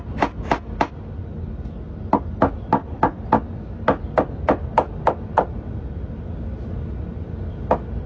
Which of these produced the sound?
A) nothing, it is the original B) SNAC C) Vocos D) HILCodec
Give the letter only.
A